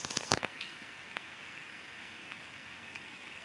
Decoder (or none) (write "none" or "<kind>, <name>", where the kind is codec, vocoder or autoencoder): codec, SNAC